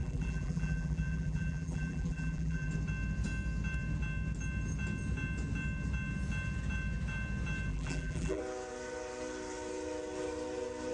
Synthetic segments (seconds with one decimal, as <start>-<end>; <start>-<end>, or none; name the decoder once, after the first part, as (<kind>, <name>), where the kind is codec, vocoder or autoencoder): 0.0-2.7 (vocoder, BigVGAN v2); 7.7-8.4